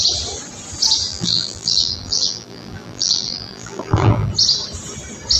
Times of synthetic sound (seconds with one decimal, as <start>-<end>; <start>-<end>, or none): 1.1-4.3